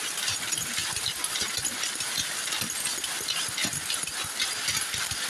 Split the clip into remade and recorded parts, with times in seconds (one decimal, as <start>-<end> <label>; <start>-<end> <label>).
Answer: 0.0-5.3 recorded